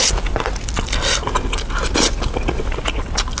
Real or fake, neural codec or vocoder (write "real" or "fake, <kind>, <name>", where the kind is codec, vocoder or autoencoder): real